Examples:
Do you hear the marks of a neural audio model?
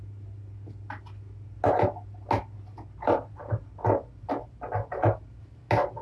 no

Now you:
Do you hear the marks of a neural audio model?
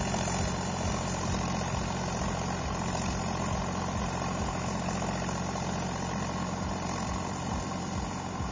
no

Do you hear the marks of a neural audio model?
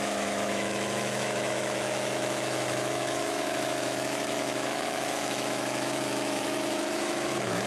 yes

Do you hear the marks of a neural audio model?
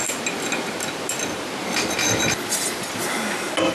no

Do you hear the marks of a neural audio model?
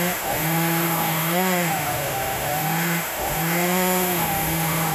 yes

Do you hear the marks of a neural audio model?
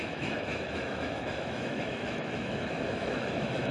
yes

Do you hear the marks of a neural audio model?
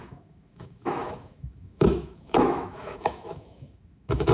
yes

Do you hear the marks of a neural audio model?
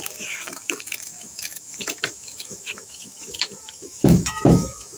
yes